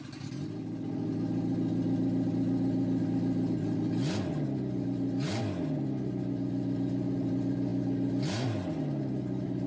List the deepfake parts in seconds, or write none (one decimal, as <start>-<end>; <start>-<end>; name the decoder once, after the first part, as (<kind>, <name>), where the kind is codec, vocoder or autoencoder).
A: none